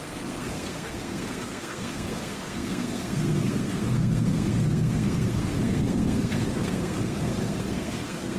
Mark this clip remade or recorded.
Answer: remade